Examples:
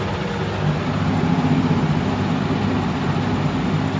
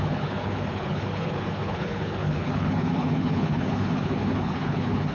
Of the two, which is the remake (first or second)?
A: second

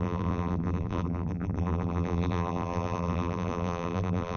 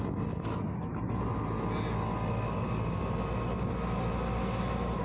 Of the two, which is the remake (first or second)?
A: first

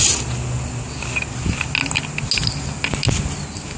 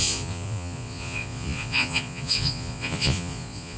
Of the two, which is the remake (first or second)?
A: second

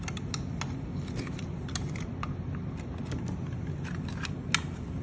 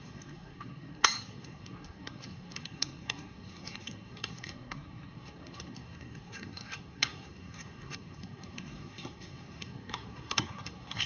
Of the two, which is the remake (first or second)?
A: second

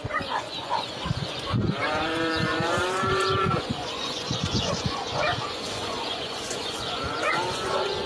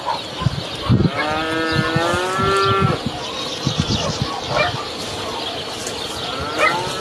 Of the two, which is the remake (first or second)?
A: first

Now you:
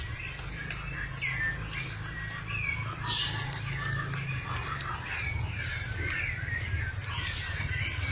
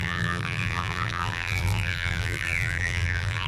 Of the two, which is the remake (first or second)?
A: second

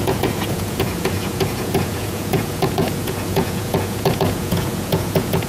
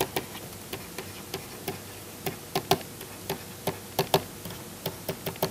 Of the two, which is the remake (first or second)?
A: first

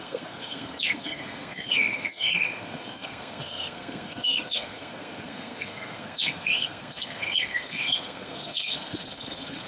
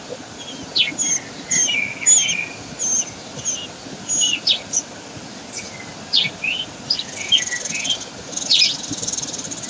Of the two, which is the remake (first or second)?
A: first